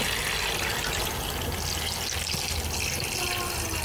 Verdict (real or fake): real